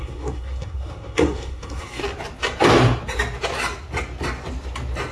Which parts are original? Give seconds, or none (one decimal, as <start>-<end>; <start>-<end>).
2.0-5.1